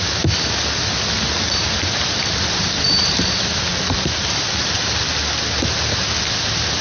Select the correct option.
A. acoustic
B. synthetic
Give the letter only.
A